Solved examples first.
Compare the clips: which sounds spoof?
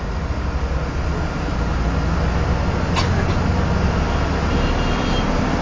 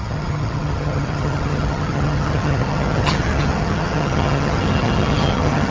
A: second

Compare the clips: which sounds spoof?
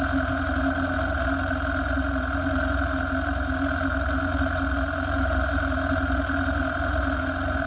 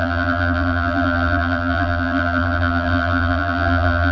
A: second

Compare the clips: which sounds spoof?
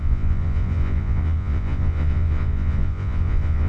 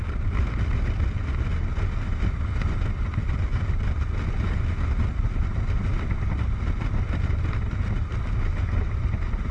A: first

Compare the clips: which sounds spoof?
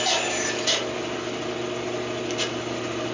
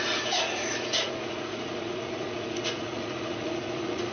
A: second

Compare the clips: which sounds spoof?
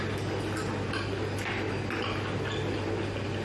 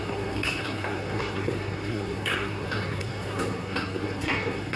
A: second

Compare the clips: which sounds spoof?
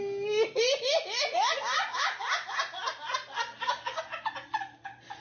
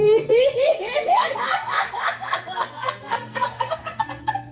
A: second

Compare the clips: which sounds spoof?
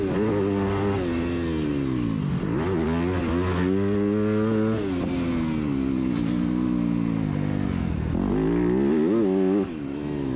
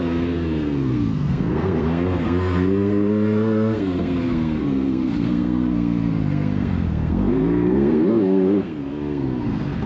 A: second